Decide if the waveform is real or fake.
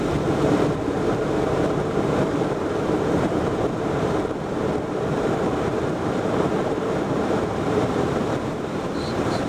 fake